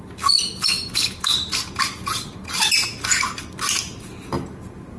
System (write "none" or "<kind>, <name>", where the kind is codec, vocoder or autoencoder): none